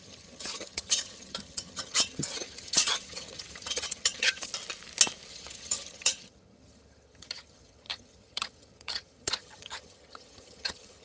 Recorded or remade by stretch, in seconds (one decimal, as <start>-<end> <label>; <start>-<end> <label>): 0.0-4.5 remade; 4.5-5.3 recorded; 5.3-11.0 remade